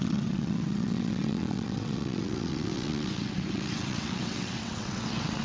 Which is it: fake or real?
fake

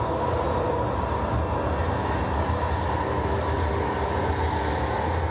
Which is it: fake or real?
real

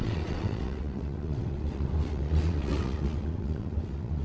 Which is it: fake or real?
fake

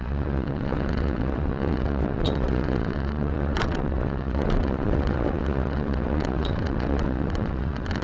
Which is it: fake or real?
fake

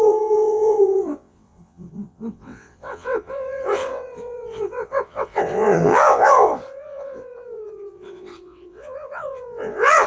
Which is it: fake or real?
fake